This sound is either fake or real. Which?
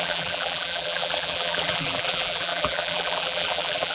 fake